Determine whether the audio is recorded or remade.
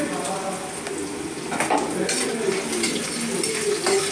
recorded